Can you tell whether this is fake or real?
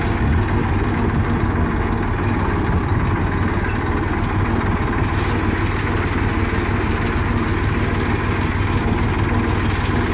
real